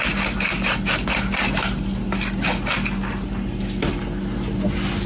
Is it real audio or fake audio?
real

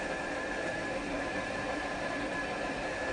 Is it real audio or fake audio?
fake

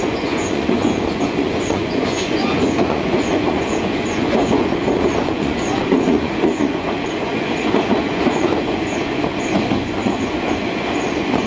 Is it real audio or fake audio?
fake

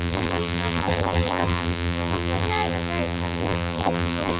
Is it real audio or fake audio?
fake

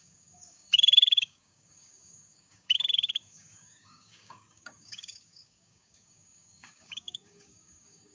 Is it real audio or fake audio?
fake